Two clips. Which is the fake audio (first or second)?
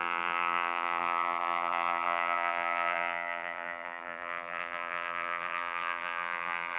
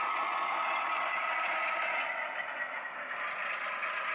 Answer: first